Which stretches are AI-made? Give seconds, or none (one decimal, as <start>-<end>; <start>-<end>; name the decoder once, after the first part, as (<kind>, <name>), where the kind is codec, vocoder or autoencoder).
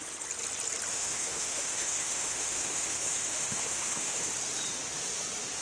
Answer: 0.9-4.3 (autoencoder, DAC-VAE)